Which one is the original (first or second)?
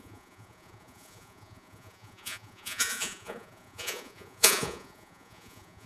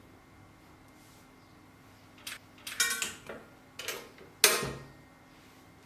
second